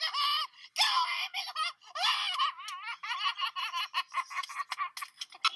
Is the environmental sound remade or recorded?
recorded